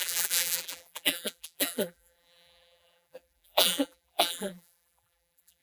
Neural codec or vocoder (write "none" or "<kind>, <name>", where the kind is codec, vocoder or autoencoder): vocoder, BigVGAN v2